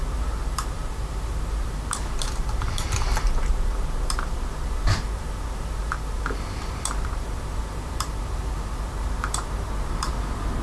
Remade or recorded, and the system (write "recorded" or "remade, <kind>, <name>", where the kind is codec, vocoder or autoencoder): remade, vocoder, BigVGAN v2